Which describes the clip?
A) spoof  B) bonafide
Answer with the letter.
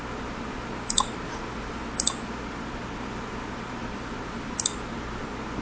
B